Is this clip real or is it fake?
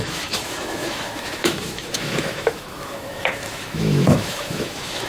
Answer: fake